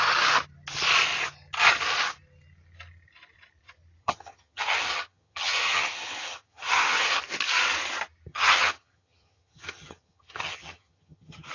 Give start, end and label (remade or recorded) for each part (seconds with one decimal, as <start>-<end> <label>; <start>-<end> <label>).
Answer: 0.0-4.0 recorded; 4.0-7.2 remade; 7.2-8.3 recorded; 8.3-11.5 remade